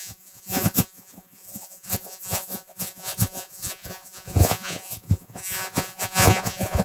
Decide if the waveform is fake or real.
fake